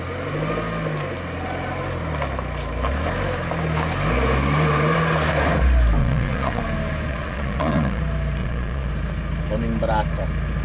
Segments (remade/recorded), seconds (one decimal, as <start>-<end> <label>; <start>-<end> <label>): 0.0-6.0 recorded; 6.0-6.6 remade; 6.6-7.1 recorded; 7.1-8.0 remade; 8.0-8.4 recorded; 8.4-8.9 remade; 8.9-10.6 recorded